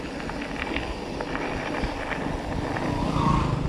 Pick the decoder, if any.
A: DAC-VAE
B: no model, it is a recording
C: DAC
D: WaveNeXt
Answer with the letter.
B